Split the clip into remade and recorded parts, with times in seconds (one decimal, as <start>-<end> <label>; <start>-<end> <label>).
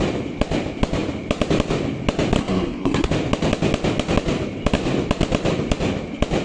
0.0-2.4 recorded; 2.4-3.1 remade; 3.1-6.4 recorded